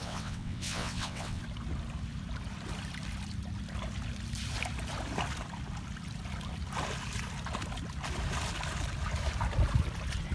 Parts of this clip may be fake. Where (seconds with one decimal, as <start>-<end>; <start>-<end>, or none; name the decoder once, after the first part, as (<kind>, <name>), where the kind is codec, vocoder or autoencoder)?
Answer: 0.0-1.4 (vocoder, WaveNeXt)